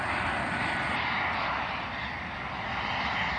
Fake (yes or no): no